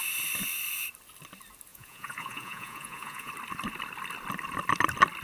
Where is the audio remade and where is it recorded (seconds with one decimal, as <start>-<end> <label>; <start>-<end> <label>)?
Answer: 0.0-1.7 recorded; 1.7-3.3 remade; 3.3-5.2 recorded

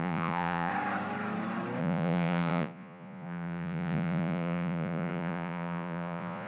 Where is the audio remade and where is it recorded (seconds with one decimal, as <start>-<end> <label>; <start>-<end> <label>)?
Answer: 0.0-0.7 remade; 0.7-1.8 recorded; 1.8-6.5 remade

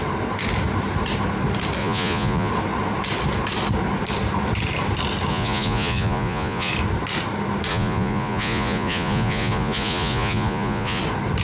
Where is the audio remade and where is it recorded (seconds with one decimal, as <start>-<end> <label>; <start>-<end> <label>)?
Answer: 0.0-1.8 recorded; 1.8-2.5 remade; 2.5-5.3 recorded; 5.3-6.7 remade; 6.7-7.7 recorded; 7.7-11.0 remade; 11.0-11.4 recorded

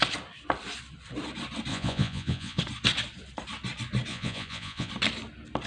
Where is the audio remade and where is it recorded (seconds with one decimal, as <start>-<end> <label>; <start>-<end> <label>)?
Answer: 0.0-1.7 recorded; 1.7-2.6 remade; 2.6-4.1 recorded; 4.1-4.9 remade; 4.9-5.7 recorded

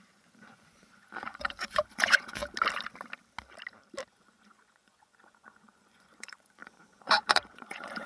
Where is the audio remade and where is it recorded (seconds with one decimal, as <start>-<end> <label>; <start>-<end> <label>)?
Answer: 0.0-2.4 remade; 2.4-4.1 recorded; 4.1-8.1 remade